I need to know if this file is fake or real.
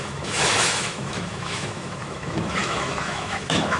fake